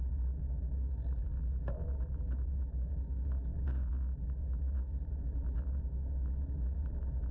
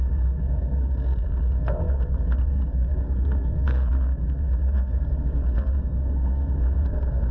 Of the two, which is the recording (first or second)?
first